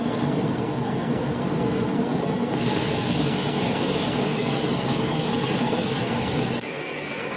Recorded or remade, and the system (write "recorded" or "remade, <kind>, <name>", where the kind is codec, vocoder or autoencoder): remade, codec, SNAC